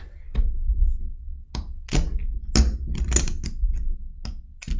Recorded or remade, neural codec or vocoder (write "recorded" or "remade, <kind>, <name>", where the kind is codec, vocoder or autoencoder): recorded